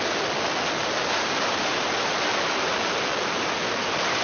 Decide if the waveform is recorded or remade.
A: recorded